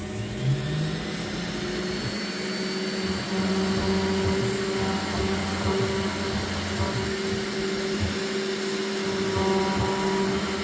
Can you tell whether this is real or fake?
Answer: real